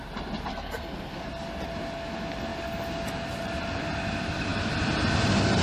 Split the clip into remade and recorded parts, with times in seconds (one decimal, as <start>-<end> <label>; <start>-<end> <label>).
0.0-0.5 recorded; 0.5-1.2 remade; 1.2-5.6 recorded